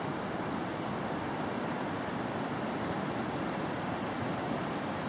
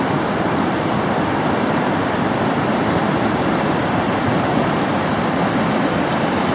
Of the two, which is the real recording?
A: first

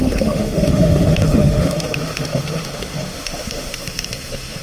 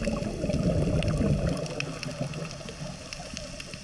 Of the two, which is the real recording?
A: second